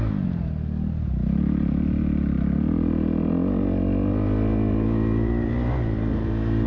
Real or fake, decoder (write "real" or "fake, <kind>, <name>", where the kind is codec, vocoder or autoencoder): real